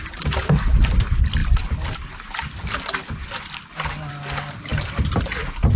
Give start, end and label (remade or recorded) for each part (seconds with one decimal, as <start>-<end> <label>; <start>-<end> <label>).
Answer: 0.0-5.8 recorded